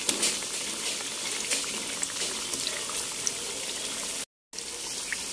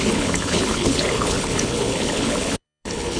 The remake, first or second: second